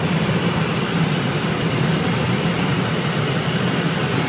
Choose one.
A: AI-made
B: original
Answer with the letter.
B